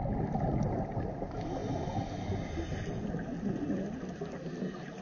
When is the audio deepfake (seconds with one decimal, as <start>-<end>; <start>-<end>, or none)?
none